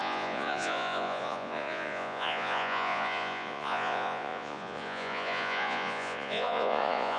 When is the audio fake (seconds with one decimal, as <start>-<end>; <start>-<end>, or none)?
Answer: 0.0-7.2

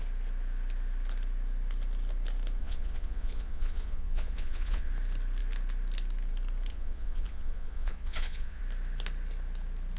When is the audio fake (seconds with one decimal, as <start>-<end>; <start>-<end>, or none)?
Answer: 2.6-4.9; 6.7-8.6

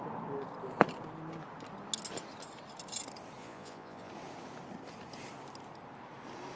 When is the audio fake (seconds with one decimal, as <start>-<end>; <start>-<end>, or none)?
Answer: 3.4-4.1

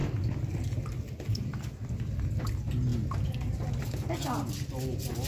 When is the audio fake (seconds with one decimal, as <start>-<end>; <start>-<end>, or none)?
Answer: none